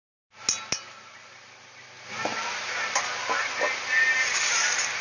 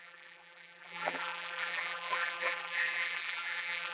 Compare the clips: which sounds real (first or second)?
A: first